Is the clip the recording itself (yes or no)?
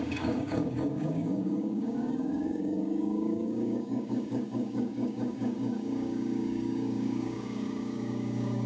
no